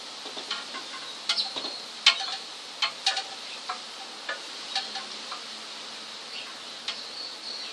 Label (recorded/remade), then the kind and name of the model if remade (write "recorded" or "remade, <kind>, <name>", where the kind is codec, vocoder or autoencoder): recorded